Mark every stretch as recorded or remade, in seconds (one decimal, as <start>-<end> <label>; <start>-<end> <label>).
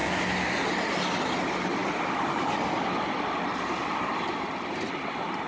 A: 0.0-5.5 recorded